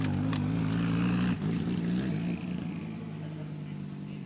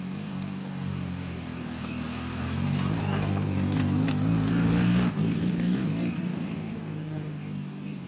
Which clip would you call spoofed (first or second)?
second